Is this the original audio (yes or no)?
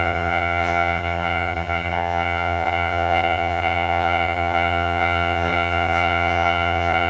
no